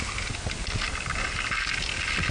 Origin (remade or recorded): recorded